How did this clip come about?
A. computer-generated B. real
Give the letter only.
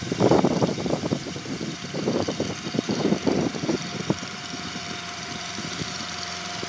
A